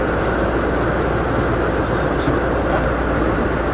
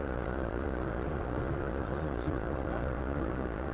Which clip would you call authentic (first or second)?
first